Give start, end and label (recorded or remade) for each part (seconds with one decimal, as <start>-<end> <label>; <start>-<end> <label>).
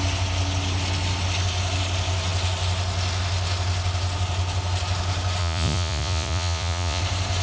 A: 0.0-5.4 recorded; 5.4-7.0 remade; 7.0-7.4 recorded